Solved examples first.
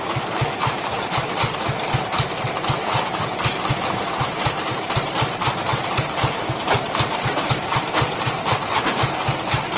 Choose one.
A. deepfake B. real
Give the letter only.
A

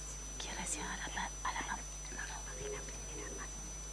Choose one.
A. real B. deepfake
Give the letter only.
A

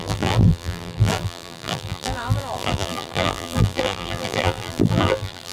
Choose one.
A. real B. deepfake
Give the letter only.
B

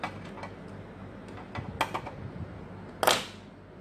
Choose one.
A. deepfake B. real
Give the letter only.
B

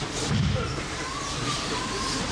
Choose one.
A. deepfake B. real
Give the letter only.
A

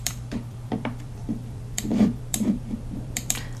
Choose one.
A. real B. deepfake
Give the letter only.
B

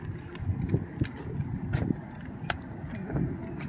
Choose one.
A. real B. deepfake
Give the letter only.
A